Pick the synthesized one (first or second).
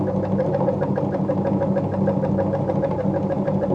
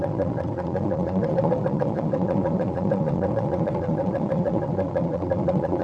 second